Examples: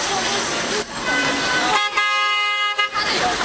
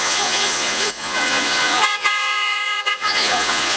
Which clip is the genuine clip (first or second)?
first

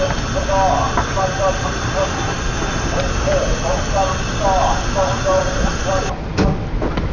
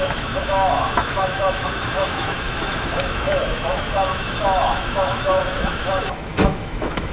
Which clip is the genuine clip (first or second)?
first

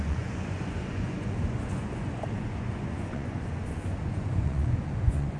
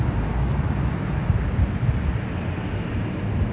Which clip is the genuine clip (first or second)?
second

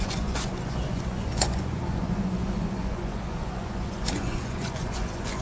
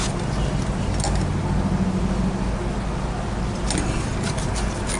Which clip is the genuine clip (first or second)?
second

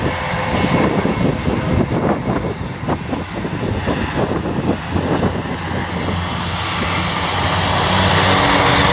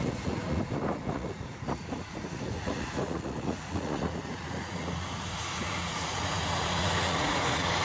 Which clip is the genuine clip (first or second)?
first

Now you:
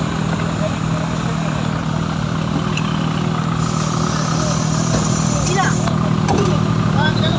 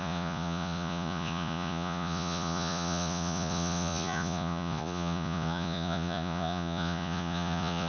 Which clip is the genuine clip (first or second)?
first